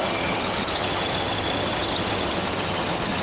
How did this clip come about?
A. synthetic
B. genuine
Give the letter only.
A